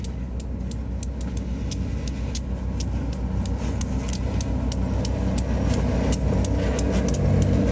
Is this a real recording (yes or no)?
yes